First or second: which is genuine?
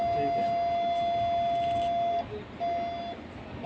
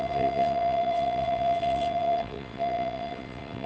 first